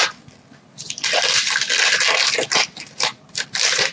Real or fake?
real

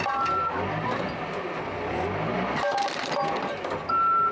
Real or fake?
real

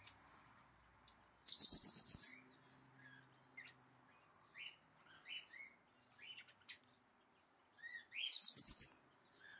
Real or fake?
real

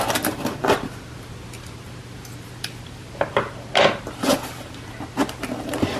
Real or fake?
real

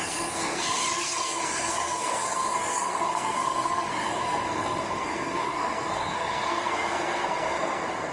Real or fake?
fake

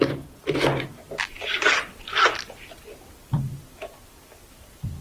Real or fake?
fake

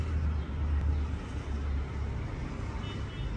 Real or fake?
real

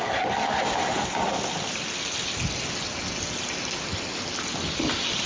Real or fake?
real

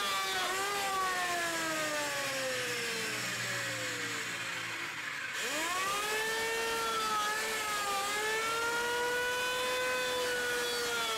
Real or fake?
real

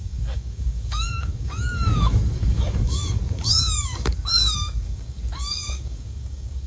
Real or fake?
fake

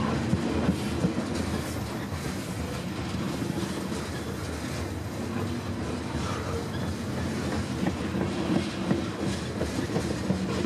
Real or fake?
real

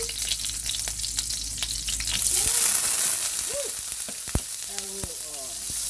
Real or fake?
real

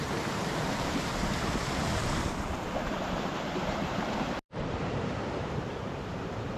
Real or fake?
fake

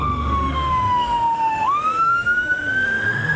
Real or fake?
fake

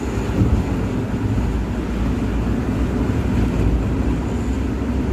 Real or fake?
real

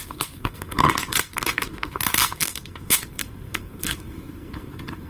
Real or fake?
fake